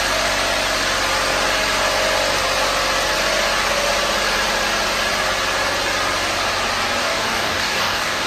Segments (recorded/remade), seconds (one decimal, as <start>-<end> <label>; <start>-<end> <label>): 0.0-7.0 recorded; 7.0-8.3 remade